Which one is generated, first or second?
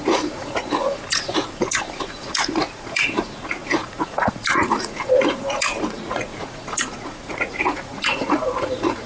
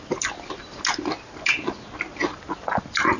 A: first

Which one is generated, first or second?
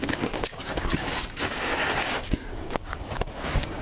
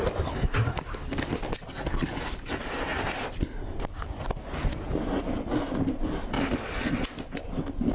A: first